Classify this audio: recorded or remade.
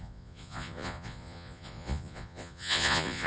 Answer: remade